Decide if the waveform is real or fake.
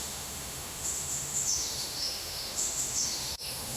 fake